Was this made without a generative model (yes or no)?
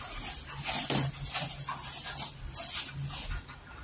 yes